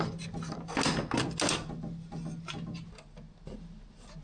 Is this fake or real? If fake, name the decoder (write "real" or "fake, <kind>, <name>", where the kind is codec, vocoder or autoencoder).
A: real